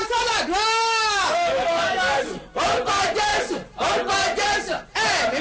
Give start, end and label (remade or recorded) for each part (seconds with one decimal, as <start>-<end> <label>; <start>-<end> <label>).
0.0-2.2 remade; 2.2-5.4 recorded